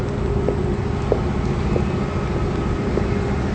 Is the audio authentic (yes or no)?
yes